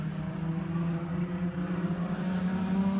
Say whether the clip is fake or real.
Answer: real